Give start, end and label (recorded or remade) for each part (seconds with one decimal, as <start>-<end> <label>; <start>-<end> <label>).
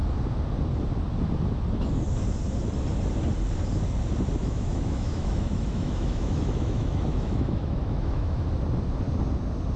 0.0-4.4 recorded; 4.4-8.5 remade; 8.5-9.8 recorded